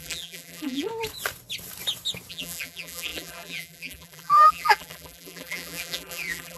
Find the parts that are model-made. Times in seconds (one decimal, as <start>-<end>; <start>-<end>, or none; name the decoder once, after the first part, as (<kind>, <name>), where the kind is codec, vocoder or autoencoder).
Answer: 0.0-0.9 (vocoder, BigVGAN v2); 2.3-6.6